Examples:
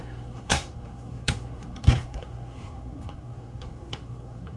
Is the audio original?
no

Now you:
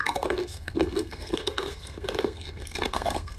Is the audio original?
no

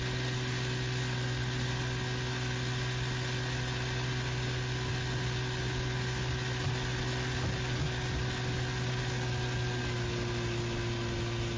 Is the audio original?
yes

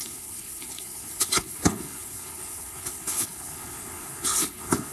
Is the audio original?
no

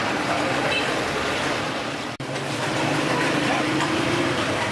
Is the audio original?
no